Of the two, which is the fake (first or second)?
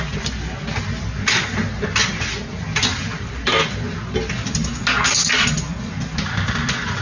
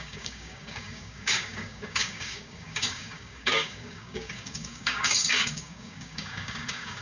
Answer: second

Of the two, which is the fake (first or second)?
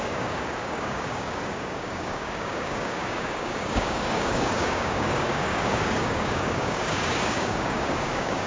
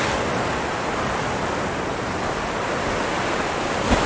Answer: first